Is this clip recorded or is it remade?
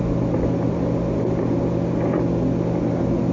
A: recorded